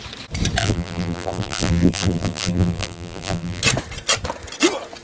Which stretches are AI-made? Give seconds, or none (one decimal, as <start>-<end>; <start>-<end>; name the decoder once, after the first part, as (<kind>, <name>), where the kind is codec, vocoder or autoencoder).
0.6-3.6 (vocoder, BigVGAN v2)